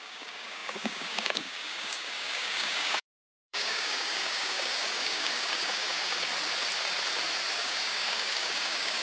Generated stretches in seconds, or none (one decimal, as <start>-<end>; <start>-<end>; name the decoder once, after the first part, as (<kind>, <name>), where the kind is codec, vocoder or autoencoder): 0.0-6.3 (codec, DAC); 7.5-9.0